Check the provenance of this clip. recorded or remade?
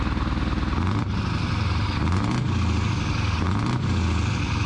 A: recorded